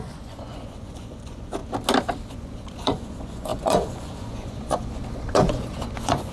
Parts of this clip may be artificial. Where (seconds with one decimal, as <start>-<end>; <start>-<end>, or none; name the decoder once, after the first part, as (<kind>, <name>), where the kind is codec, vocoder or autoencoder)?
0.0-1.6 (vocoder, Vocos); 2.3-6.3